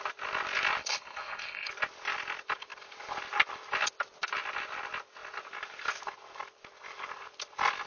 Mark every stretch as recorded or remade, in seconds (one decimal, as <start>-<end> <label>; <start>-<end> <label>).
0.0-0.8 recorded; 0.8-1.7 remade; 1.7-7.9 recorded